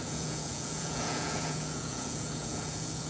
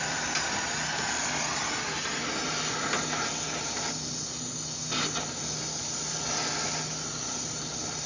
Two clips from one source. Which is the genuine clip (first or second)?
second